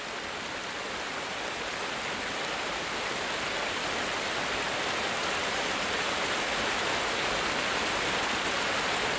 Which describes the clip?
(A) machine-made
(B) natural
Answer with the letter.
B